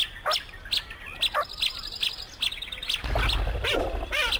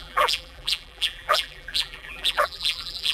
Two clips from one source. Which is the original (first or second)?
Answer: first